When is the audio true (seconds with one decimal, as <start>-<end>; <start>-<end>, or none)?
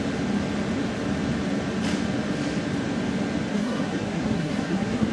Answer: 0.0-3.5